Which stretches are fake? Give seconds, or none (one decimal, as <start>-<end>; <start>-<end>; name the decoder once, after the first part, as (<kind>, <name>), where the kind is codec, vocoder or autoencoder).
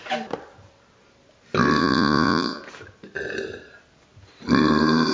1.8-2.6 (vocoder, Vocos)